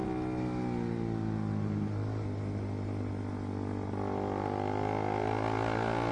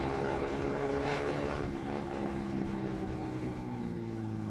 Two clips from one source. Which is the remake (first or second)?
second